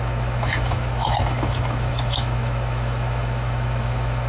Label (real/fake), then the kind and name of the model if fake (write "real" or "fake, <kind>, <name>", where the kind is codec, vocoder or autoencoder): fake, autoencoder, DAC-VAE